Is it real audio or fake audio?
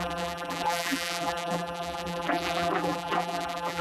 fake